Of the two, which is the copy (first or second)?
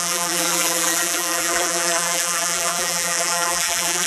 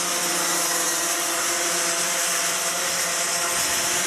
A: first